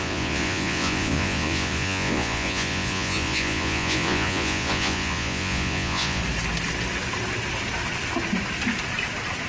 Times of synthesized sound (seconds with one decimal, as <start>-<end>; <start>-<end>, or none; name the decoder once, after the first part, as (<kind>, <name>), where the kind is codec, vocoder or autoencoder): 0.0-6.2 (vocoder, Vocos)

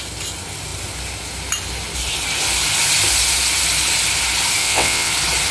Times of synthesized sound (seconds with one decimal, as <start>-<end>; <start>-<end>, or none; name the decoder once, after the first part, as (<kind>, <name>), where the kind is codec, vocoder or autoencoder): 4.6-5.1 (vocoder, WaveNeXt)

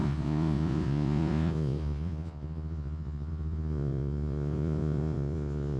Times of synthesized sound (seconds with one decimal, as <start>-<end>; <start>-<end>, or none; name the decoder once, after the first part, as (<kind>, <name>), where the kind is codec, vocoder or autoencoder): 0.0-5.8 (vocoder, Vocos)

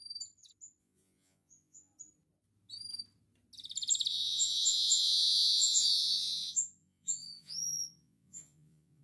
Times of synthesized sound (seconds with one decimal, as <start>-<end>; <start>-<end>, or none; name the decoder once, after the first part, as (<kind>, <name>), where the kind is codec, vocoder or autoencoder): 0.8-1.9 (vocoder, Vocos); 4.1-9.0

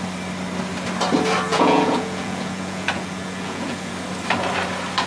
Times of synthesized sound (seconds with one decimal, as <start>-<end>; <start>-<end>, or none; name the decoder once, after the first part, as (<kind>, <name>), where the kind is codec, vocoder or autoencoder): 1.5-3.9 (vocoder, Vocos)